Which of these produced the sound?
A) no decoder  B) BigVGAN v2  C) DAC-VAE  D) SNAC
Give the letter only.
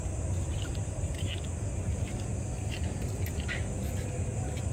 A